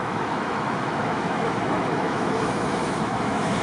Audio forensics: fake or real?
fake